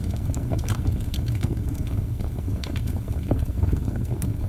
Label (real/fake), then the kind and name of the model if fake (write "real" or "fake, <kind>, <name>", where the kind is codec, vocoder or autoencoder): fake, codec, SNAC